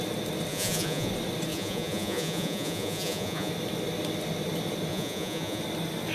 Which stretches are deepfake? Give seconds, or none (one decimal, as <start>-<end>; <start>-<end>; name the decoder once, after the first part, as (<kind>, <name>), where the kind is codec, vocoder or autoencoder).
0.5-1.1 (vocoder, Vocos); 1.5-3.5; 4.9-5.6